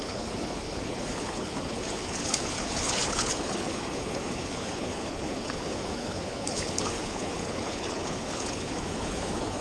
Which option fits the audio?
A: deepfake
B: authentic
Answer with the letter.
A